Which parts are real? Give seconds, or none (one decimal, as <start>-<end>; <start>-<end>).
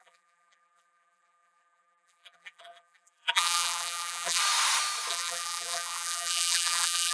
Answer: 4.4-5.1